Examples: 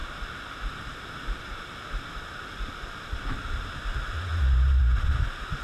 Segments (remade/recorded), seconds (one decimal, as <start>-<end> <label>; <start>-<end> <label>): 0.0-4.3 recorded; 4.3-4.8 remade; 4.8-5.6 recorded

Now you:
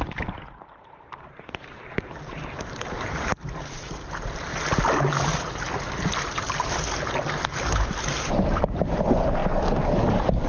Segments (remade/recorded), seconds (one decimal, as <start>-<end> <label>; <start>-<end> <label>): 0.0-4.5 remade; 4.5-8.1 recorded; 8.1-9.4 remade; 9.4-10.1 recorded; 10.1-10.5 remade

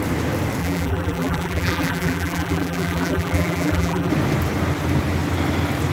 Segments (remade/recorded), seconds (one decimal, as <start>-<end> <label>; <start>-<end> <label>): 0.0-0.6 recorded; 0.6-4.1 remade; 4.1-5.9 recorded

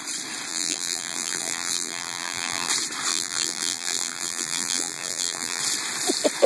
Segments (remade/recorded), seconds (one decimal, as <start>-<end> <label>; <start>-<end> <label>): 0.0-0.5 recorded; 0.5-2.7 remade; 2.7-3.1 recorded; 3.1-5.6 remade; 5.6-6.5 recorded

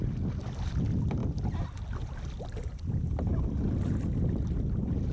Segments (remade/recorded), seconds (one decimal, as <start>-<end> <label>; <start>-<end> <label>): 0.0-1.2 remade; 1.2-2.0 recorded; 2.0-3.3 remade; 3.3-3.8 recorded; 3.8-5.1 remade